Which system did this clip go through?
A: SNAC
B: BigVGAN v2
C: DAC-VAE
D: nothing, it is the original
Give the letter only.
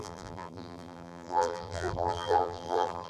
B